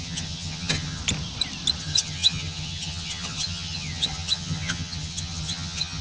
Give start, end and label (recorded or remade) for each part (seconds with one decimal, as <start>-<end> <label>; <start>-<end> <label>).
0.0-1.0 remade; 1.0-1.8 recorded; 1.8-6.0 remade